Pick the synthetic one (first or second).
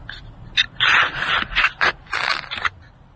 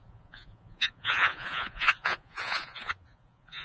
second